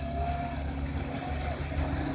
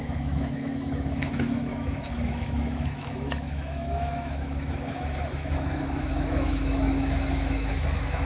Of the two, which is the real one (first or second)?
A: first